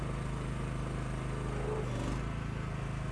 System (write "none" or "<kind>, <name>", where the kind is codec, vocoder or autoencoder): none